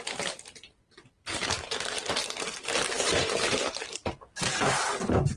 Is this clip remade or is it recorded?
remade